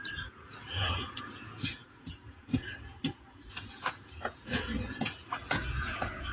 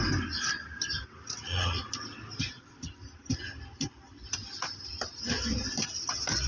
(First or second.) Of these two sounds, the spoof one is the first